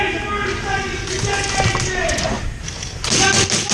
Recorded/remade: recorded